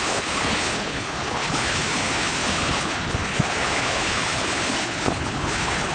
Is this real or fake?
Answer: fake